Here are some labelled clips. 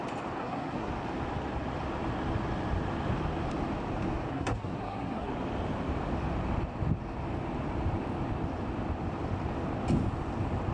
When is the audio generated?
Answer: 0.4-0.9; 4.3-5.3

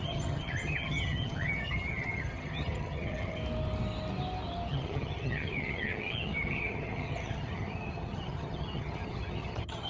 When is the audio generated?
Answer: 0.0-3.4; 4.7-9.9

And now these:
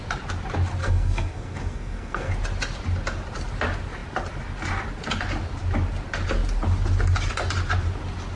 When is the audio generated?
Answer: 0.8-2.3

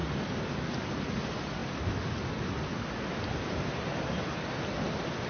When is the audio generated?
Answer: none